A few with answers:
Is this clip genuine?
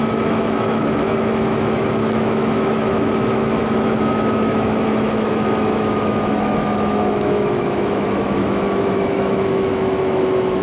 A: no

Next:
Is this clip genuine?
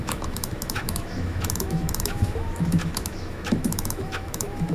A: no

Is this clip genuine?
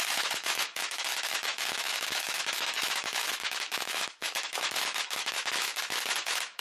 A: no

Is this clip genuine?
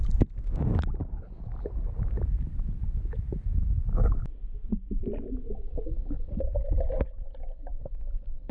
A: yes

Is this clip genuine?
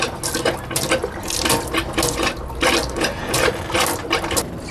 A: yes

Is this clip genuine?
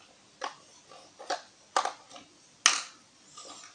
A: yes